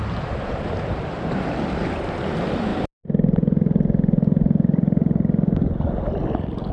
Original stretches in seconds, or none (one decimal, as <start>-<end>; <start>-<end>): 2.7-6.7